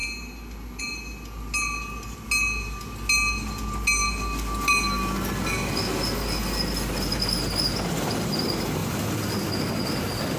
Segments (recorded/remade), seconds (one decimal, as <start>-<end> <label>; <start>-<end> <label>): 0.0-10.4 recorded